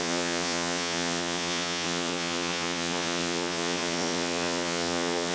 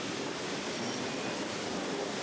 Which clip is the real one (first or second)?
second